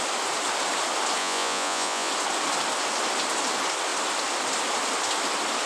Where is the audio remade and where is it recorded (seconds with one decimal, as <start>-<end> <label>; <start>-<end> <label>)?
0.0-1.2 recorded; 1.2-2.1 remade; 2.1-5.7 recorded